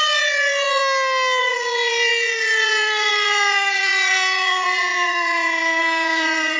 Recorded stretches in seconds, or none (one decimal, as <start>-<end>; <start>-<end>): 0.8-1.4

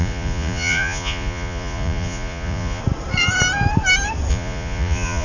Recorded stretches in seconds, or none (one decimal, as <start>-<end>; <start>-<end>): 2.8-4.3

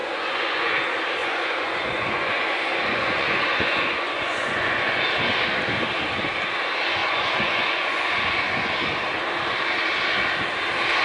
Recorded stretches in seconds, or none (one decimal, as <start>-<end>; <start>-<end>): 0.7-1.2; 5.0-7.0; 8.7-11.0

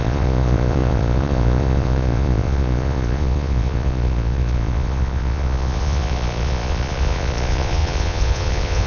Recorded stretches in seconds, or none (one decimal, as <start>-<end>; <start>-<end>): none